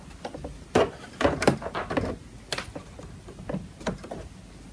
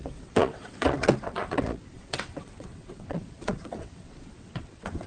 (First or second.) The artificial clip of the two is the second